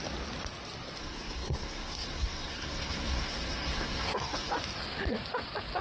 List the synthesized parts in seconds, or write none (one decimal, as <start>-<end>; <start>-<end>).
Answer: 1.0-4.5